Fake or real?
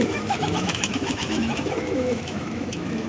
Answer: fake